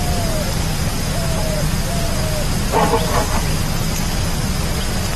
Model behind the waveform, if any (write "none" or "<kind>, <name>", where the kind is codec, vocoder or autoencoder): none